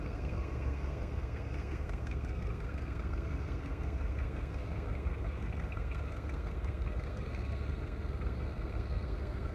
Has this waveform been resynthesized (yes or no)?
yes